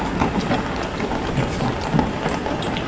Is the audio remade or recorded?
recorded